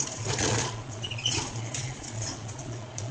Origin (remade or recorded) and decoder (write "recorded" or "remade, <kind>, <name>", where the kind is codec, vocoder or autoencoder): remade, vocoder, Vocos